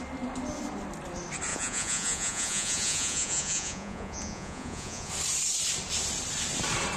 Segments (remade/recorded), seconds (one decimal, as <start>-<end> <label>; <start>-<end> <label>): 0.0-1.5 recorded; 1.5-5.1 remade; 5.1-7.0 recorded